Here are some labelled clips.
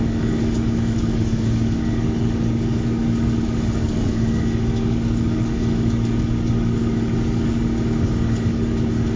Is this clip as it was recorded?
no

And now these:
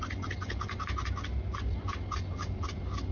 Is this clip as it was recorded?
yes